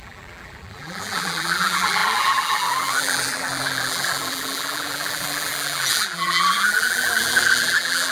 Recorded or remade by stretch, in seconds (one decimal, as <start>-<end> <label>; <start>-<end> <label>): 0.0-8.1 remade

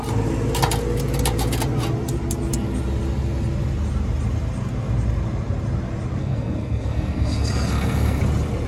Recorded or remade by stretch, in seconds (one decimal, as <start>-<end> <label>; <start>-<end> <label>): 0.0-6.2 recorded; 6.2-8.2 remade; 8.2-8.7 recorded

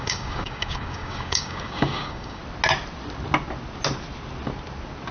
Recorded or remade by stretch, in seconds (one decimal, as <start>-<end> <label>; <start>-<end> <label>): 0.0-2.4 remade; 2.4-5.1 recorded

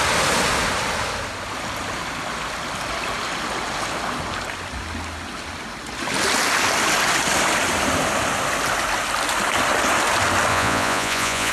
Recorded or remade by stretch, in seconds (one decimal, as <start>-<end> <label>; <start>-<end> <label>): 0.0-10.5 recorded; 10.5-11.5 remade